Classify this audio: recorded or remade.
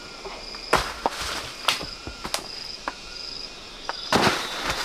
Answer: recorded